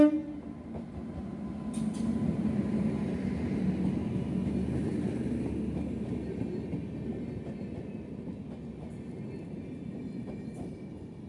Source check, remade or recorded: recorded